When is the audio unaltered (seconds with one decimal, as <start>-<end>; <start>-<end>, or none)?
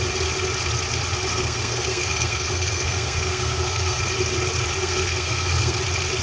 0.0-1.3; 4.0-4.8; 5.8-6.2